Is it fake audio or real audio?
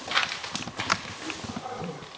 real